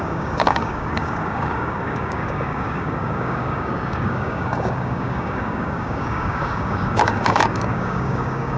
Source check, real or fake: fake